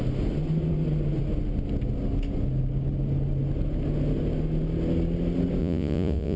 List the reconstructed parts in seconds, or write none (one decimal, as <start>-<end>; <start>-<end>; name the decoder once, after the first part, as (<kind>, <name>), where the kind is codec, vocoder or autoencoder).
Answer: 5.6-6.4 (vocoder, Vocos)